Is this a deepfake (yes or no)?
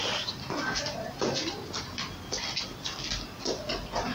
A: no